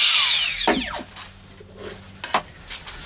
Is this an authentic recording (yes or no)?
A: yes